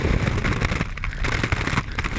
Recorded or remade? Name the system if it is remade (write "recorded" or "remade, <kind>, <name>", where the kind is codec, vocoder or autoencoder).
recorded